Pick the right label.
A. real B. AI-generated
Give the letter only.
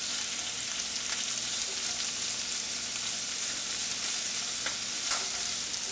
A